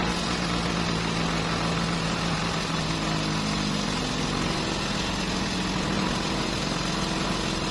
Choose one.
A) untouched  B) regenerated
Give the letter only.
A